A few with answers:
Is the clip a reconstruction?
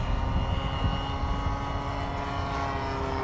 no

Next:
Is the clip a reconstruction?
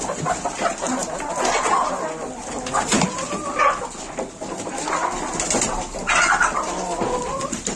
no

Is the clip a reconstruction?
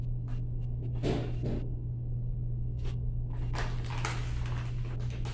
no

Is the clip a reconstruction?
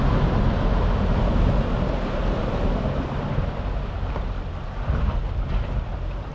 no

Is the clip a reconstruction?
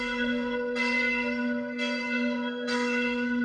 yes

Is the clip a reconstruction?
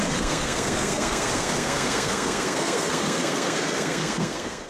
yes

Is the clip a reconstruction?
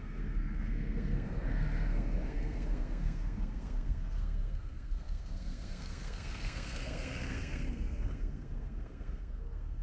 yes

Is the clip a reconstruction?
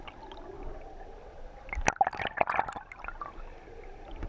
no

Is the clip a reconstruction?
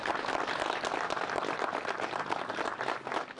no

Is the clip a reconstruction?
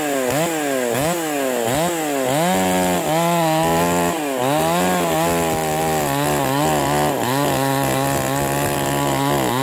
no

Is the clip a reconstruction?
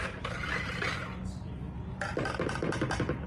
no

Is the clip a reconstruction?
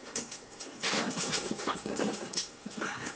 yes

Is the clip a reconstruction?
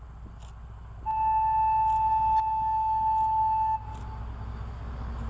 no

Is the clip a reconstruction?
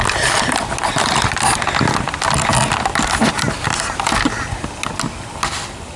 no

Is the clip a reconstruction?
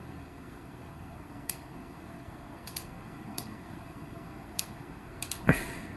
yes